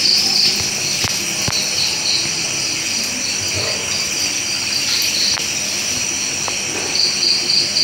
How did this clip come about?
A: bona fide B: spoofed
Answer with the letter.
A